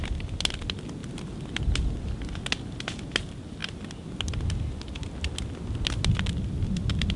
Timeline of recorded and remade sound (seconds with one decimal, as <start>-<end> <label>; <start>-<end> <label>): 0.0-7.2 recorded